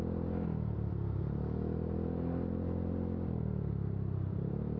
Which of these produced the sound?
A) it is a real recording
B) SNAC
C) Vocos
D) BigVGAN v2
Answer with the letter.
A